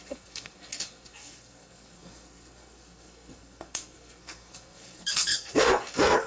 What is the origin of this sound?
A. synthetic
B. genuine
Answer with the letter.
A